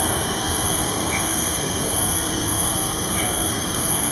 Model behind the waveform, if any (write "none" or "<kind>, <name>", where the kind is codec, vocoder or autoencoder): codec, SNAC